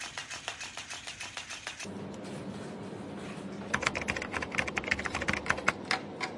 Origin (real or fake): real